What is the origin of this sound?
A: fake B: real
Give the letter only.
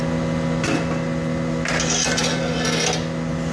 B